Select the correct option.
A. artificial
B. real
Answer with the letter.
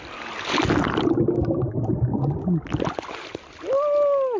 B